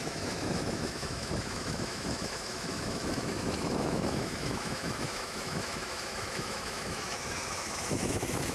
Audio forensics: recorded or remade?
remade